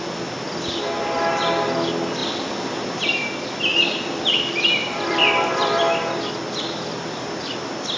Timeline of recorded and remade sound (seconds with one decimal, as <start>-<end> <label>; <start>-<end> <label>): 0.0-3.7 recorded; 3.7-5.8 remade; 5.8-8.0 recorded